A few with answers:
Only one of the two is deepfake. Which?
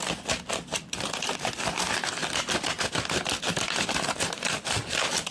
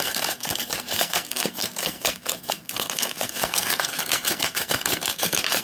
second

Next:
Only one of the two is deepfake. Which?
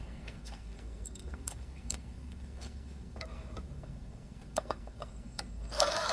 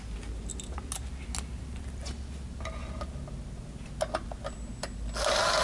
first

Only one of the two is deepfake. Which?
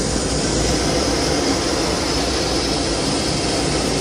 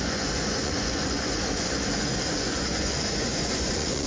second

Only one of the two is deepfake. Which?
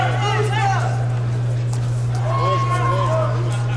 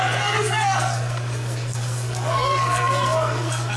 second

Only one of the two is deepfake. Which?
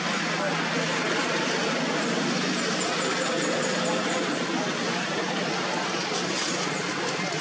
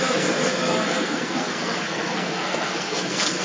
second